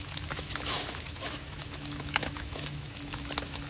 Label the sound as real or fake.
fake